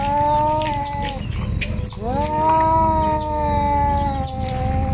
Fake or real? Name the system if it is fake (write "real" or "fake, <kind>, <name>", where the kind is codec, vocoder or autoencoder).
real